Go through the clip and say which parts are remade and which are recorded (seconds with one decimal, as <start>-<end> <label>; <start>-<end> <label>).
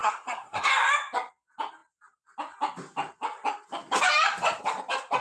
0.0-0.7 remade; 0.7-5.2 recorded